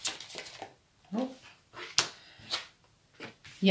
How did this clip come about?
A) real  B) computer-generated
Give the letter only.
A